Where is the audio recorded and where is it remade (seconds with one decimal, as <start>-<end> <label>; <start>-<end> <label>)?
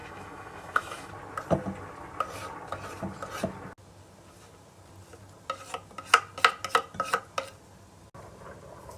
0.0-1.1 remade; 1.1-9.0 recorded